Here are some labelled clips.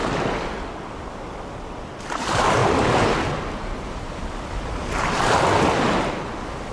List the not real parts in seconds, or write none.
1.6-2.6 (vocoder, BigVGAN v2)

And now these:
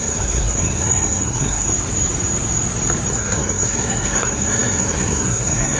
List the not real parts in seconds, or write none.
0.0-1.7 (codec, SNAC); 3.1-5.8

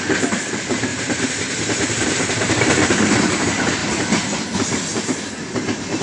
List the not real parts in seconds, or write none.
0.9-3.4 (vocoder, BigVGAN v2)

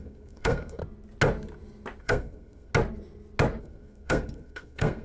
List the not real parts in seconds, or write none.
0.0-0.8 (codec, SNAC); 2.0-2.7; 3.6-5.0

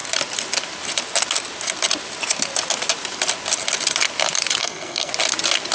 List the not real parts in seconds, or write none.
4.6-5.1 (codec, SNAC)

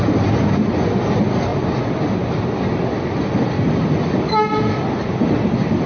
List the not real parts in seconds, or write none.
none